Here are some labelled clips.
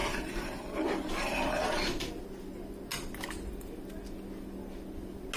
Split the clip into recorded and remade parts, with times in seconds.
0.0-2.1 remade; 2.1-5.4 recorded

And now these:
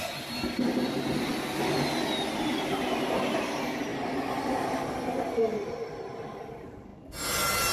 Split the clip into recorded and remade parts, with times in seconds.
0.0-1.3 remade; 1.3-2.3 recorded; 2.3-6.9 remade; 6.9-7.7 recorded

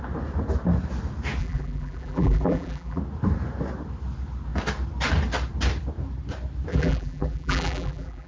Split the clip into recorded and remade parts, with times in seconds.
0.0-1.4 recorded; 1.4-3.0 remade; 3.0-6.7 recorded; 6.7-8.3 remade

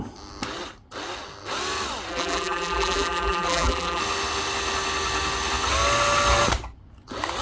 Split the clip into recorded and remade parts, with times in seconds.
0.0-2.1 recorded; 2.1-4.0 remade; 4.0-7.4 recorded

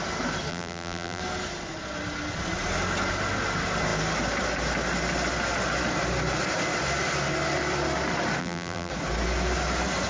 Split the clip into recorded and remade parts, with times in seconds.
0.0-0.5 recorded; 0.5-1.2 remade; 1.2-8.4 recorded; 8.4-8.9 remade; 8.9-10.1 recorded

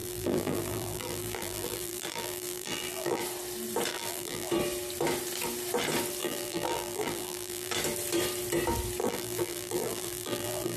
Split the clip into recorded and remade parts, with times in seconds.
0.0-3.2 remade; 3.2-3.9 recorded; 3.9-4.5 remade; 4.5-6.2 recorded; 6.2-7.7 remade; 7.7-9.0 recorded; 9.0-10.8 remade